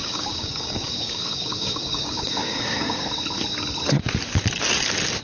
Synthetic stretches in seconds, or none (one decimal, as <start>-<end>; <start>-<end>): 0.0-3.1